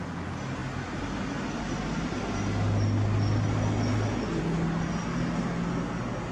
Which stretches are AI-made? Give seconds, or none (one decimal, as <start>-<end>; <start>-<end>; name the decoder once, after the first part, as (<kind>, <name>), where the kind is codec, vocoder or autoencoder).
none